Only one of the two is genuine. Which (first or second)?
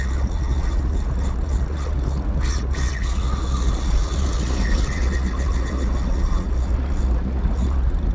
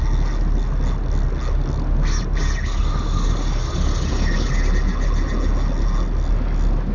second